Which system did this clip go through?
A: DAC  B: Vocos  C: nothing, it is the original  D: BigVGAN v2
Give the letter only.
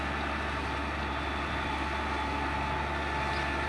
C